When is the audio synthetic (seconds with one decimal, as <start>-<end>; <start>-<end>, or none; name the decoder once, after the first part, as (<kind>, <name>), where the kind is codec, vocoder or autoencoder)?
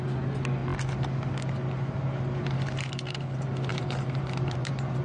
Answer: 2.4-3.2 (vocoder, BigVGAN v2); 3.7-5.0